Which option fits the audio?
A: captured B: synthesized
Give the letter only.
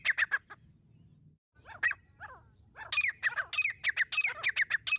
A